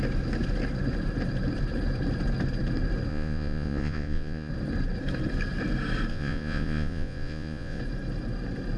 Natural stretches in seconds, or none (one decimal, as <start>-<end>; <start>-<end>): 0.0-3.1; 4.5-6.1; 7.8-8.8